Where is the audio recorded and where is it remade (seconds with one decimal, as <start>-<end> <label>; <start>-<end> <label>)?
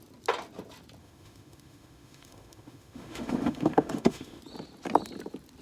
0.0-1.0 recorded; 1.0-4.4 remade; 4.4-5.6 recorded